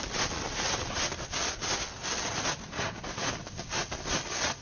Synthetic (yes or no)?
no